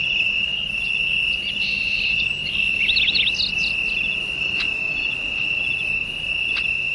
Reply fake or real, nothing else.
real